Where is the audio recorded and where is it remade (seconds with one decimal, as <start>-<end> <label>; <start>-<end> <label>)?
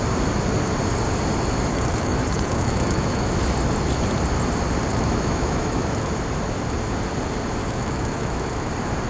0.0-1.7 recorded; 1.7-3.3 remade; 3.3-4.9 recorded; 4.9-6.1 remade; 6.1-7.6 recorded; 7.6-8.7 remade; 8.7-9.1 recorded